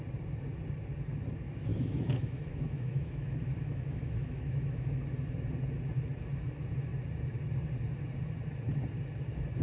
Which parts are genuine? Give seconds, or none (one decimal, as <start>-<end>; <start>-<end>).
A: 0.0-1.7; 5.0-9.6